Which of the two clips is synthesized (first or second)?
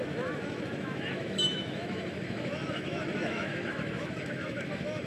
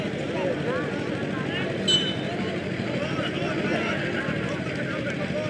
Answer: first